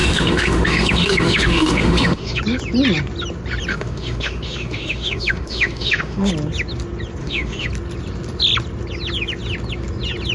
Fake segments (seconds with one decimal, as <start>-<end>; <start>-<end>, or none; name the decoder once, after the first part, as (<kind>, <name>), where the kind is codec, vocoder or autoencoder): 0.0-2.4 (autoencoder, DAC-VAE); 3.7-6.3; 7.2-7.7